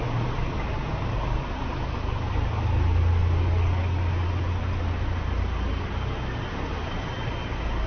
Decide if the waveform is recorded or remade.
recorded